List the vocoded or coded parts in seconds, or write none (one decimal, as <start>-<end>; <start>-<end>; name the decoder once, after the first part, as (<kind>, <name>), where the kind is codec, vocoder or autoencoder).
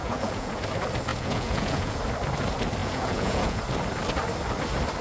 0.0-0.6 (vocoder, Vocos); 1.1-2.0; 2.8-3.6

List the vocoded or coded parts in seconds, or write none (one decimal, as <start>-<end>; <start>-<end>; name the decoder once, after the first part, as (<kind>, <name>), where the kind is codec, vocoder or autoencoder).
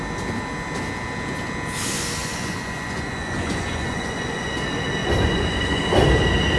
2.2-4.5 (vocoder, Vocos); 5.0-5.8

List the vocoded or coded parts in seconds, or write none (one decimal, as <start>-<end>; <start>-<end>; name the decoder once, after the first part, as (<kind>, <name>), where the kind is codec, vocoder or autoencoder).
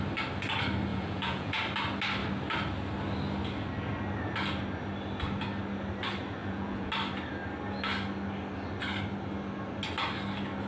0.9-1.6 (vocoder, Vocos); 6.4-6.9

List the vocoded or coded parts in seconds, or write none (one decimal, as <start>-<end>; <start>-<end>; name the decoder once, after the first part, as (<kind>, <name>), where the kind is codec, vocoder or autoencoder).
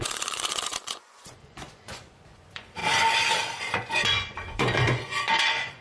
0.0-2.8 (vocoder, Vocos); 3.6-5.8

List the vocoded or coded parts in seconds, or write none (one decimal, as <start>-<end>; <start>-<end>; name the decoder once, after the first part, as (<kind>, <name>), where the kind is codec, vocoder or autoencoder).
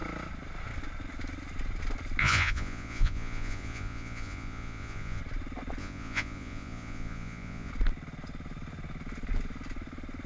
2.2-5.2 (vocoder, Vocos); 5.8-7.7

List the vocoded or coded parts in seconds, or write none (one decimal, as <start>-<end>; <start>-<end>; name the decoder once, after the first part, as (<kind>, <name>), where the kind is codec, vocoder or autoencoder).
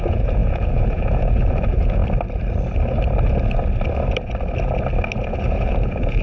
0.0-2.0 (vocoder, Vocos); 5.2-6.2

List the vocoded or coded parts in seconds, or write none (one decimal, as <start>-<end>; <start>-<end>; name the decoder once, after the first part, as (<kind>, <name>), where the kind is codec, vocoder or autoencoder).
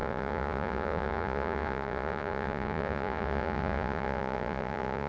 0.0-5.1 (vocoder, Vocos)